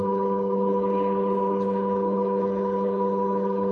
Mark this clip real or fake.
fake